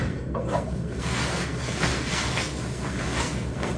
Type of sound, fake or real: fake